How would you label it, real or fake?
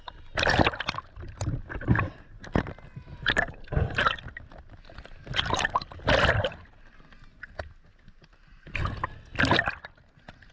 real